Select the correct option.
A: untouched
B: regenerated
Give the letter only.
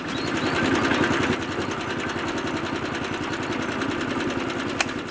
A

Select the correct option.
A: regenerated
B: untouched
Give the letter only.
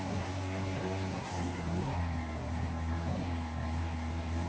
A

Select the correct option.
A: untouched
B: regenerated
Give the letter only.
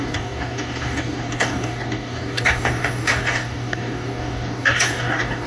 B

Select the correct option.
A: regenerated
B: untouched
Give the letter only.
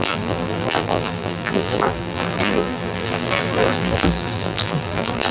A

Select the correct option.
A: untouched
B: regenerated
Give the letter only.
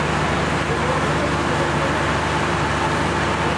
A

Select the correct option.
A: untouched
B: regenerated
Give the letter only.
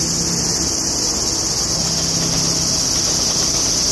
A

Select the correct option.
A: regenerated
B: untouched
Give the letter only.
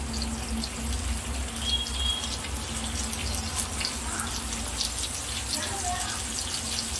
B